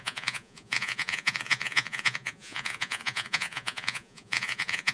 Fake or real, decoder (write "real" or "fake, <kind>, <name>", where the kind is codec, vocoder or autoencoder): fake, vocoder, Vocos